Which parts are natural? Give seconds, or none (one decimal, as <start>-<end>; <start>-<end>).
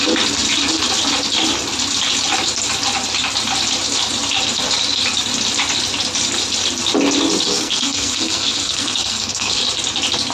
0.0-7.5; 9.6-10.3